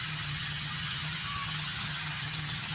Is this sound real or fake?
fake